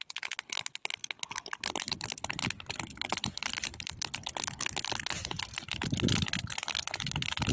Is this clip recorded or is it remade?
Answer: recorded